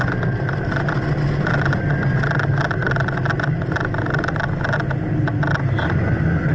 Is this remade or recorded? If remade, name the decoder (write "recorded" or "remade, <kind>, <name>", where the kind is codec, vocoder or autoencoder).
recorded